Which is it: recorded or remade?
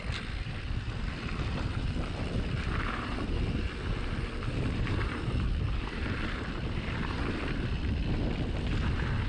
remade